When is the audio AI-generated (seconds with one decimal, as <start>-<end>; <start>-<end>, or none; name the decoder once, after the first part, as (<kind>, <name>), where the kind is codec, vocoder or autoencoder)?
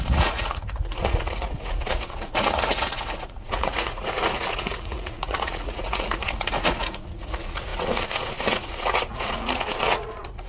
0.0-10.5 (vocoder, Vocos)